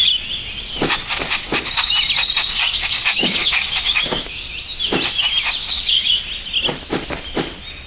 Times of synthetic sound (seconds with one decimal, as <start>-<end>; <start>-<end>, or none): 2.4-4.5; 5.6-6.2